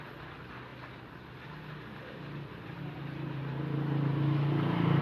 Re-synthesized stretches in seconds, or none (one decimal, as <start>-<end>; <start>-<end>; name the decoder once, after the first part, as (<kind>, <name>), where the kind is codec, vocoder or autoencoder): none